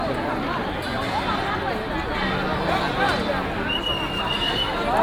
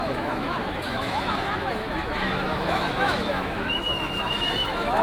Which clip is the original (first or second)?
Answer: first